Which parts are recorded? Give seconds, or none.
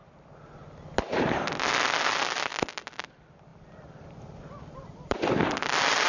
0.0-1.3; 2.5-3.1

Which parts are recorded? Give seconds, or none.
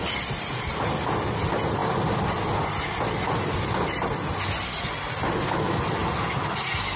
0.0-7.0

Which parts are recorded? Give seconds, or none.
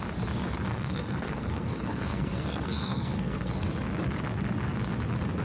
0.0-0.7; 3.5-5.4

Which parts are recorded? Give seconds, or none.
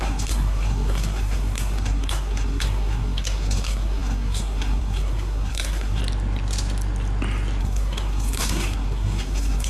6.0-7.6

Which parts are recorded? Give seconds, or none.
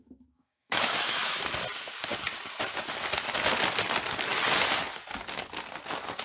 1.4-6.2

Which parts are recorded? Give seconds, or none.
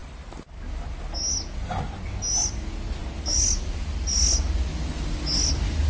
0.0-5.9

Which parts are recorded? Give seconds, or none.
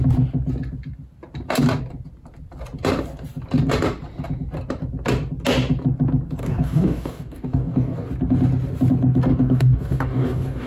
0.0-6.4; 8.1-9.3